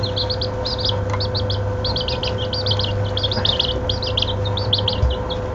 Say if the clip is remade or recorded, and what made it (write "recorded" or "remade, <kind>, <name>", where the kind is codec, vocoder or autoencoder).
recorded